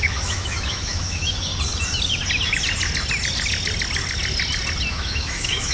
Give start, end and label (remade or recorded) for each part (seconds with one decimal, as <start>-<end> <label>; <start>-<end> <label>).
0.0-1.5 remade; 1.5-4.9 recorded; 4.9-5.7 remade